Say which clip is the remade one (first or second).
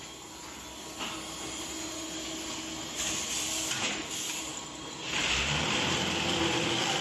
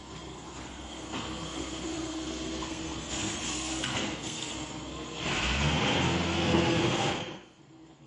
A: second